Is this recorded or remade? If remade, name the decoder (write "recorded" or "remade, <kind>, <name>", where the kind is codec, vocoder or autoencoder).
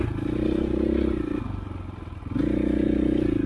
recorded